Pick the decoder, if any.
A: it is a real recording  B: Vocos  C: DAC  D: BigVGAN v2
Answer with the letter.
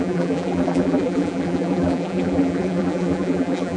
D